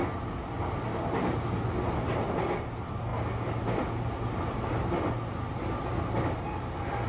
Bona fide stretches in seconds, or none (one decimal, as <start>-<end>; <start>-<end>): 0.0-7.1